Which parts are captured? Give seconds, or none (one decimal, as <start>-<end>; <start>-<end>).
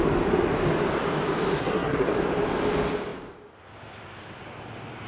0.0-1.6; 2.1-5.1